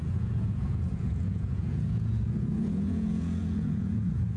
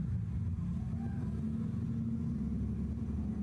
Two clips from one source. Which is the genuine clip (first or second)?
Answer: second